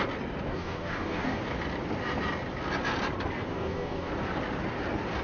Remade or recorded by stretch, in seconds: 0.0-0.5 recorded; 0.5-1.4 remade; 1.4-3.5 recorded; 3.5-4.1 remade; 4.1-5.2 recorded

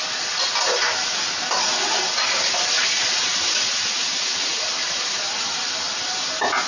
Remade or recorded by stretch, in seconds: 0.0-6.7 recorded

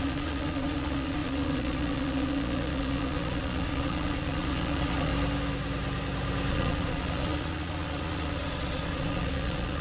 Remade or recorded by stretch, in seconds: 0.0-5.1 remade; 5.1-6.5 recorded; 6.5-9.8 remade

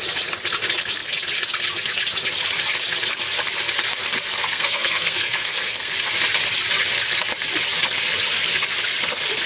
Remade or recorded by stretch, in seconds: 0.0-4.4 recorded; 4.4-5.9 remade; 5.9-9.5 recorded